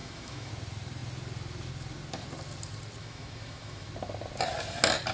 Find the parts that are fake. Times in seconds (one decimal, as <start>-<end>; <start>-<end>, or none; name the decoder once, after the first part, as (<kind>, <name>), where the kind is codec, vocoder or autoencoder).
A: 0.0-0.5 (autoencoder, DAC-VAE); 3.0-3.9